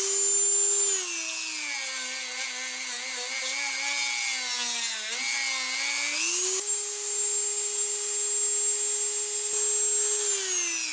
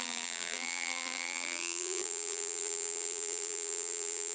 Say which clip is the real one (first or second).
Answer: first